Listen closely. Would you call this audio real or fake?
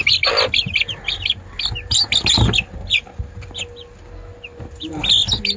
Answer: real